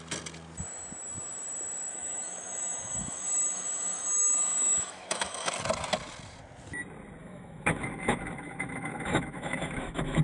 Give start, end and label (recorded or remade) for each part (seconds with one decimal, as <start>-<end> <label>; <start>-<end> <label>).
0.0-1.9 recorded; 1.9-5.5 remade; 5.5-7.2 recorded; 7.2-10.2 remade